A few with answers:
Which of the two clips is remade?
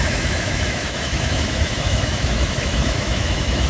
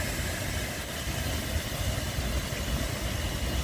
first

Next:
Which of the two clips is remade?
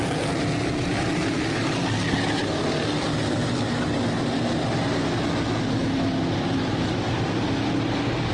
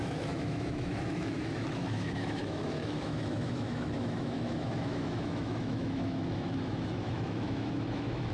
second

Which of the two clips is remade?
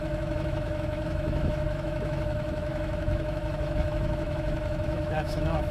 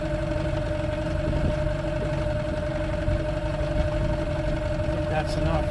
first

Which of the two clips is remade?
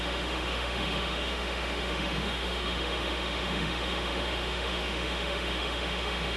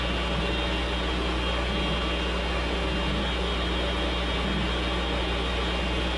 first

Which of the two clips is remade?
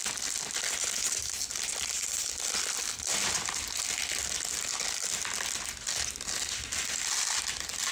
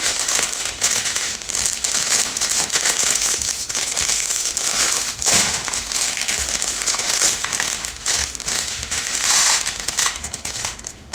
second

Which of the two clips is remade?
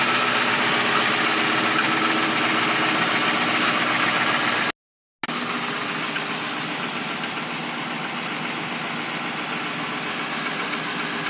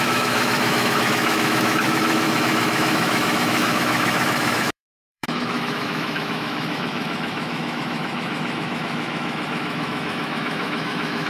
second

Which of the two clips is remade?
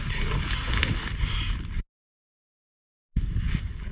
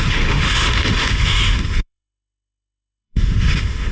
second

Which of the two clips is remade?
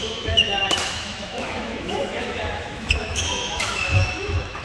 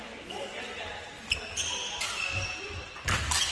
first